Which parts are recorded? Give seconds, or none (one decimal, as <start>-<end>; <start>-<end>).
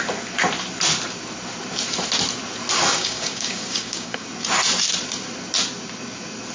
0.0-2.9; 4.3-6.5